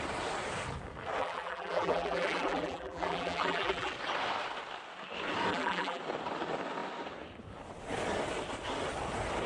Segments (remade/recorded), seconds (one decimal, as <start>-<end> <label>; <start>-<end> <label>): 0.0-1.2 recorded; 1.2-3.9 remade; 3.9-5.5 recorded; 5.5-6.0 remade; 6.0-9.5 recorded